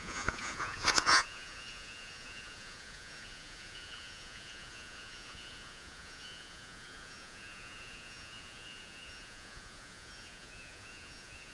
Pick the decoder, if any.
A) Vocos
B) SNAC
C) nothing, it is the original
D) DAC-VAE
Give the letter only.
A